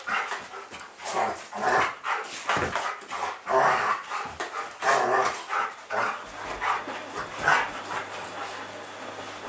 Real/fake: real